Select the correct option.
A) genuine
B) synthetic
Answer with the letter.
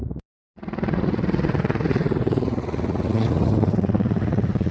B